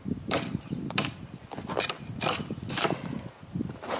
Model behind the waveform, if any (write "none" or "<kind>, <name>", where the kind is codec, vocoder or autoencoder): none